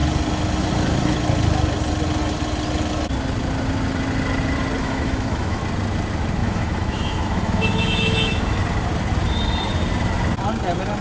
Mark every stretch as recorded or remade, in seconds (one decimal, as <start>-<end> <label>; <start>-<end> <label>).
0.0-4.8 recorded; 4.8-5.6 remade; 5.6-6.4 recorded; 6.4-8.6 remade; 8.6-11.0 recorded